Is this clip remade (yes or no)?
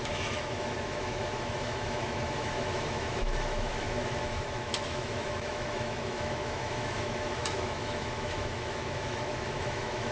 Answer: yes